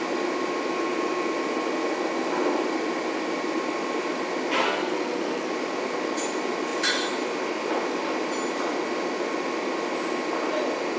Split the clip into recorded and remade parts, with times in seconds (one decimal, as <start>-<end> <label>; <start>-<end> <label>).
0.0-4.6 recorded; 4.6-5.5 remade; 5.5-11.0 recorded